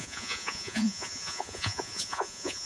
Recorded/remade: remade